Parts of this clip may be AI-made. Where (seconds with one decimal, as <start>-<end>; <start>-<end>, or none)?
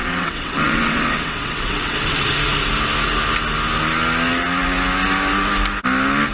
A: 0.0-2.2